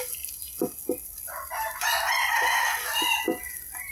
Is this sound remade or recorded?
recorded